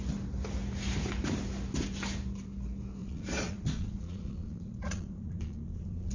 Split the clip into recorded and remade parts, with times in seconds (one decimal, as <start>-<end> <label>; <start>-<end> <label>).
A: 0.0-3.0 recorded; 3.0-6.1 remade